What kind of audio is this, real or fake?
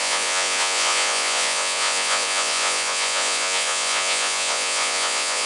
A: fake